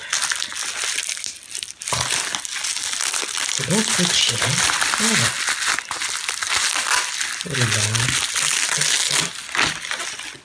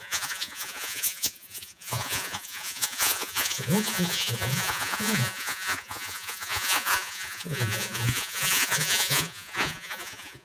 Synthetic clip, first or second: second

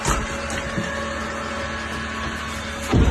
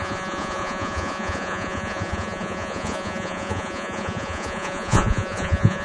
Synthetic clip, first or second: second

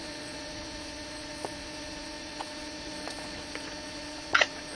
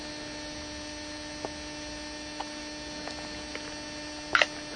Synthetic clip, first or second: first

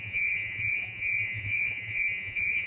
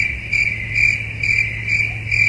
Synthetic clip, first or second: first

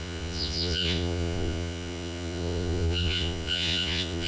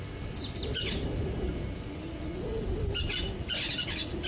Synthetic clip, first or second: first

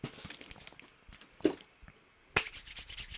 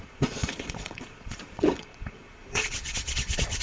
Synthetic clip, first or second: second